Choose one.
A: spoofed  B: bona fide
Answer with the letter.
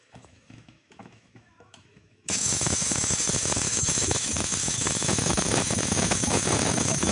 A